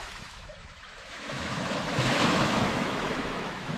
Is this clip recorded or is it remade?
remade